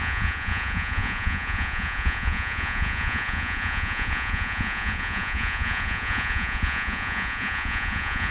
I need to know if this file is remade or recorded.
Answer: remade